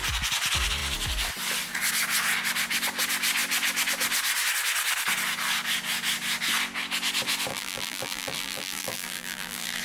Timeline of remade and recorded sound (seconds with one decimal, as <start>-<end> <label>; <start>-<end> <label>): 0.0-7.5 recorded; 7.5-9.8 remade